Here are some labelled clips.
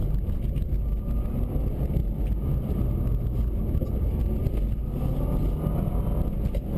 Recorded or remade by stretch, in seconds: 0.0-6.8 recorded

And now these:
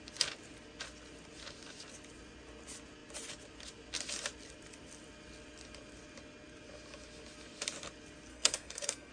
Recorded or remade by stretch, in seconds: 0.0-8.3 recorded; 8.3-9.1 remade